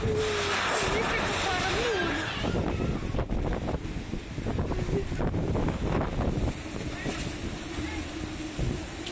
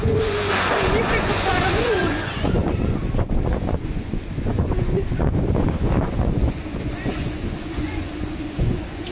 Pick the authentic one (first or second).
first